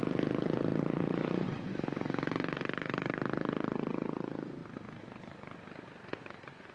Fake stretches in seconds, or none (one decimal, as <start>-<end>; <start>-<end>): 0.0-4.6; 6.1-6.7